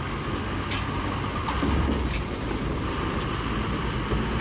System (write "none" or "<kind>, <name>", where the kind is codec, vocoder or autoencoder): none